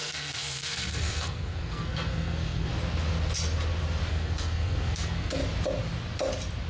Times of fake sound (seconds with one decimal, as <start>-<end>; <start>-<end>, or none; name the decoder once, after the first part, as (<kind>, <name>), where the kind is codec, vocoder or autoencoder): 0.0-2.7 (codec, SNAC); 4.1-5.4